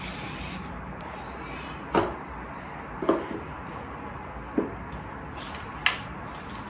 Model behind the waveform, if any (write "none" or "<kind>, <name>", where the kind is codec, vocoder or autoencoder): none